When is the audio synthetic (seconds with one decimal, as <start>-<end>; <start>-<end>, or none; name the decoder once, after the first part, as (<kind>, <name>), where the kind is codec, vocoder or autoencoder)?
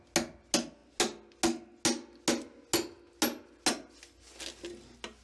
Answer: none